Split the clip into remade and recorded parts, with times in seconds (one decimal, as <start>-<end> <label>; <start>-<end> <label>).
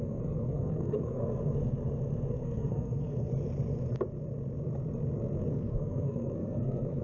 0.0-1.2 remade; 1.2-2.3 recorded; 2.3-3.3 remade; 3.3-5.5 recorded; 5.5-7.0 remade